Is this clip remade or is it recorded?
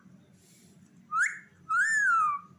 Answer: recorded